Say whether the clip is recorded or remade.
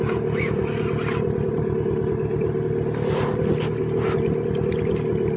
recorded